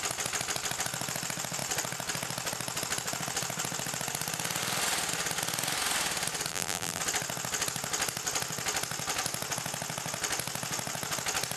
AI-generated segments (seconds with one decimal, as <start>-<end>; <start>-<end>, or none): 6.5-7.0